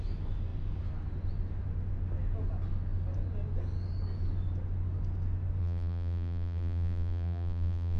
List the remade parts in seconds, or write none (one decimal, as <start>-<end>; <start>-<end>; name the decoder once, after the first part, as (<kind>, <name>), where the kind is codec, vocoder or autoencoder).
5.6-8.0 (vocoder, BigVGAN v2)